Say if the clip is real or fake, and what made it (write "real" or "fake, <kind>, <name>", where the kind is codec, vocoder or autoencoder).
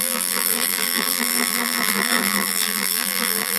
fake, vocoder, BigVGAN v2